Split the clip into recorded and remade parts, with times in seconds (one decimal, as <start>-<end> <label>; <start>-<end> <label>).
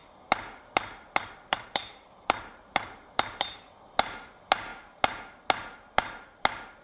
0.0-3.7 remade; 3.7-6.8 recorded